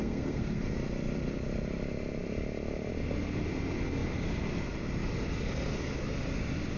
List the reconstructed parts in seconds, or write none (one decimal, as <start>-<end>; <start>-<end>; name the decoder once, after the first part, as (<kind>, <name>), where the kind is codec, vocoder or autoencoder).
0.0-0.6 (codec, SNAC)